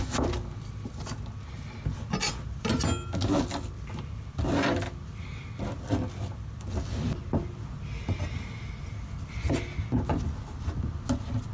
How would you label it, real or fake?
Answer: real